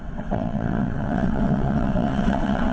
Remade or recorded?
remade